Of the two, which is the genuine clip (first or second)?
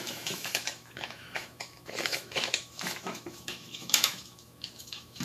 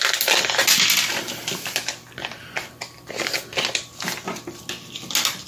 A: second